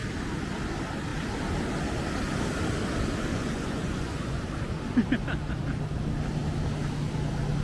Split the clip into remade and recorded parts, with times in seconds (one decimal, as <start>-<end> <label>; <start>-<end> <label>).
0.0-3.3 recorded; 3.3-4.4 remade; 4.4-7.6 recorded

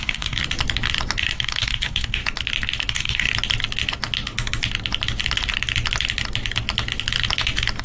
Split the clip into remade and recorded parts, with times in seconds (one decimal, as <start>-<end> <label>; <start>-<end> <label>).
0.0-0.4 remade; 0.4-1.2 recorded; 1.2-2.2 remade; 2.2-2.9 recorded; 2.9-3.3 remade; 3.3-7.8 recorded

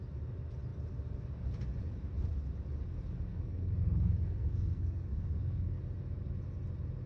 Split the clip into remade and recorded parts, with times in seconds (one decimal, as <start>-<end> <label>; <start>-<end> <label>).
0.0-3.3 recorded; 3.3-5.8 remade; 5.8-7.1 recorded